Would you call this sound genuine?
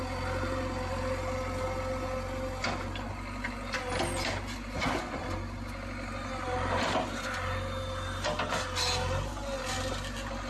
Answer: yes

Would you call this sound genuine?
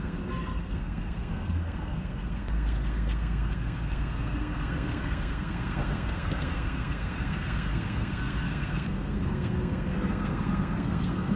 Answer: no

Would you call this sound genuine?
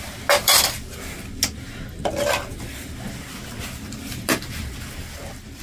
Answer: yes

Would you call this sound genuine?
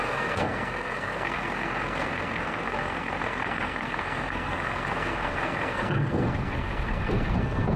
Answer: no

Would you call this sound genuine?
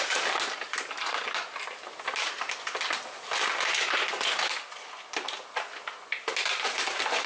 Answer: yes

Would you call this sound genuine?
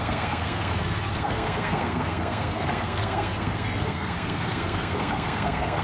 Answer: no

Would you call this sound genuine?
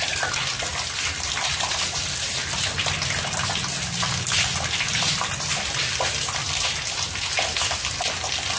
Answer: yes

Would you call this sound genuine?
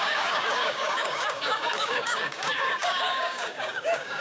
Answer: no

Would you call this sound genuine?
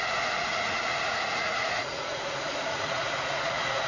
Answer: no